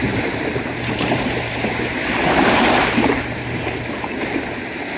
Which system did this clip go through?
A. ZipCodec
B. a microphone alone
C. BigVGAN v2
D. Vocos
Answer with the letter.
C